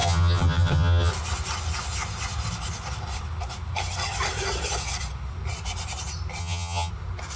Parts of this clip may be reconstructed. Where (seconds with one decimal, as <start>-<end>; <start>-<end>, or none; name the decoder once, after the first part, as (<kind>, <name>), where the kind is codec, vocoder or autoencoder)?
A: 0.0-1.1 (vocoder, HiFi-GAN); 6.4-6.9